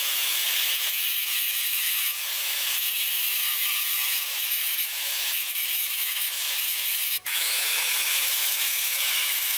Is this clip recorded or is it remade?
remade